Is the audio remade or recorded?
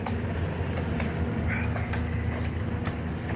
recorded